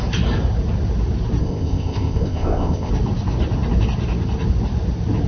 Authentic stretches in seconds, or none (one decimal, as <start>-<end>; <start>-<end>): 0.0-1.4; 2.9-5.3